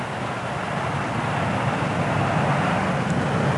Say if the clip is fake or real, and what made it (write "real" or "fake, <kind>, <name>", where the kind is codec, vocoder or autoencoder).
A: real